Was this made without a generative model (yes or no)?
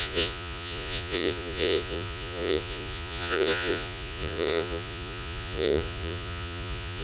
no